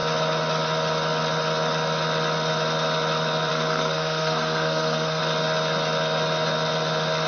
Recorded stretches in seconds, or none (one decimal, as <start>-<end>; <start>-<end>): 0.0-3.5; 5.2-7.3